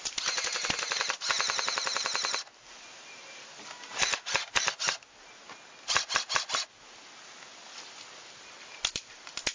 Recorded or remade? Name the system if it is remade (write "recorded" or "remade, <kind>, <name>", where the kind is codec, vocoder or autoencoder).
recorded